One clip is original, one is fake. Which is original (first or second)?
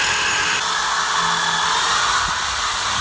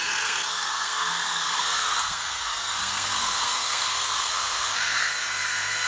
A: first